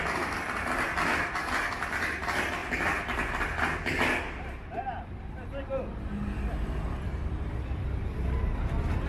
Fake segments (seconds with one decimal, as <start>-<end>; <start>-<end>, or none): none